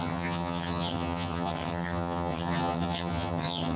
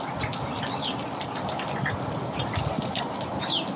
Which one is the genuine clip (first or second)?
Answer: second